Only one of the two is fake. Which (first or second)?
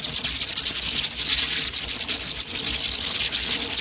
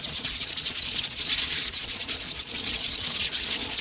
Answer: second